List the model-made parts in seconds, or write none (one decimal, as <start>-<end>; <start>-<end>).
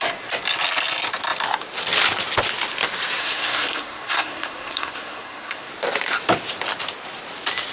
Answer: 3.2-5.7